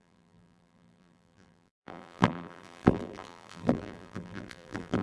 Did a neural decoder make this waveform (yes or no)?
yes